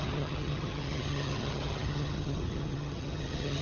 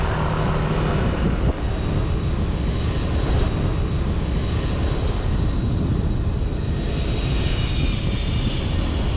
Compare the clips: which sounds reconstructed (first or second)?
first